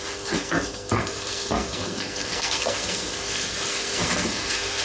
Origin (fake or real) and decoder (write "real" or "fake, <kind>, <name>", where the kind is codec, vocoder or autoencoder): fake, codec, SNAC